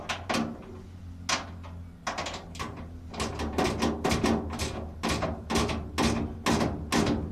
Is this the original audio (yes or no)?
yes